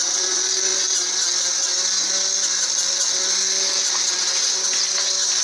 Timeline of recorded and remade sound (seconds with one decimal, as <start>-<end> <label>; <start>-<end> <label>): 0.0-5.4 recorded